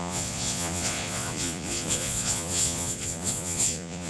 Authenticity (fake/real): fake